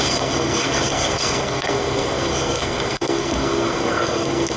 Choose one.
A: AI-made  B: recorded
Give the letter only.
A